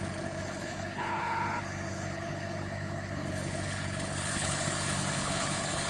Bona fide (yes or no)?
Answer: no